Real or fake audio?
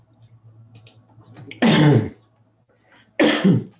real